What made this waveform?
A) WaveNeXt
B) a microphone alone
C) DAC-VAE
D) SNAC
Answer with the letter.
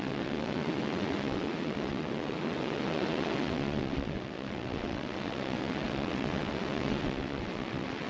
A